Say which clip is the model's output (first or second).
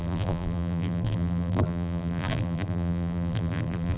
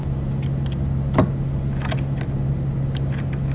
first